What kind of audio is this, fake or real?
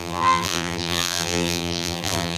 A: fake